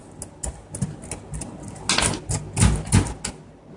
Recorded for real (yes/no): yes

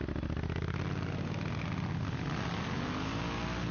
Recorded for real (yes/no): yes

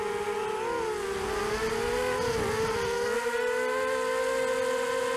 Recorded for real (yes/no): yes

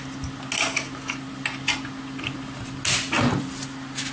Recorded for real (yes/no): yes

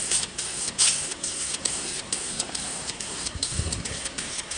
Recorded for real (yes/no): no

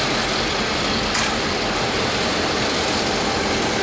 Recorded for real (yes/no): yes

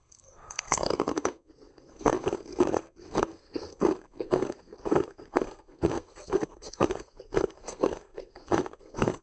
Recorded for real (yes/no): no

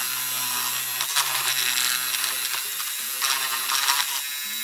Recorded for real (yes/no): yes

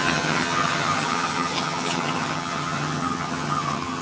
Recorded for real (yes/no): no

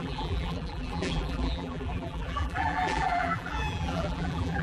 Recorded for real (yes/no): no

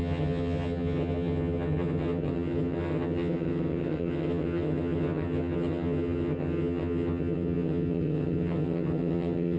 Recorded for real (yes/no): no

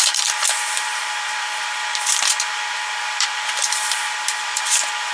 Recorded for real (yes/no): no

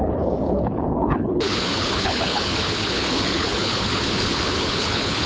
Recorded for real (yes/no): no